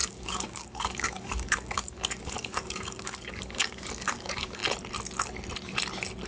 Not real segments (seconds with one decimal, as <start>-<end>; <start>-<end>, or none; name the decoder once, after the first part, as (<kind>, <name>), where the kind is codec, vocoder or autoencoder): 0.0-4.6 (codec, DAC)